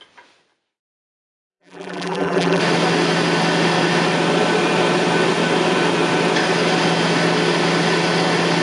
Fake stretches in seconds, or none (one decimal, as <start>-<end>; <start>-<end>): 1.5-2.6